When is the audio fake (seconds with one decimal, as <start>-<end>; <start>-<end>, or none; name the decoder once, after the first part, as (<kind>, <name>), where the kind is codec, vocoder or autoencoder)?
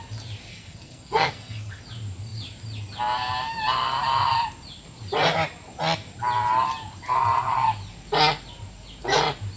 0.5-1.8 (codec, SNAC)